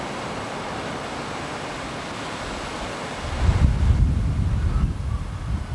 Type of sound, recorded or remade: recorded